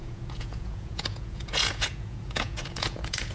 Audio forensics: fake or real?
fake